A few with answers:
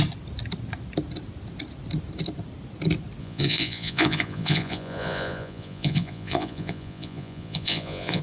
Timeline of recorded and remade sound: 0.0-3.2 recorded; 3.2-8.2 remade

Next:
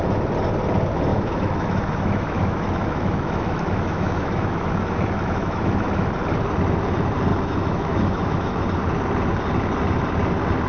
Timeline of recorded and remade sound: 0.0-1.1 recorded; 1.1-6.1 remade; 6.1-7.3 recorded; 7.3-8.6 remade; 8.6-10.7 recorded

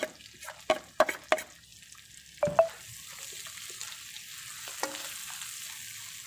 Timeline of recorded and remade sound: 0.0-6.3 recorded